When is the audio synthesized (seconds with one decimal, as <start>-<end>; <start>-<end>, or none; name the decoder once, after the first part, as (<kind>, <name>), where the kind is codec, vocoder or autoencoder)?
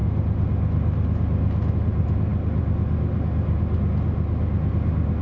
none